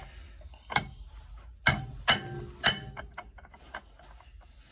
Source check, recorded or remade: recorded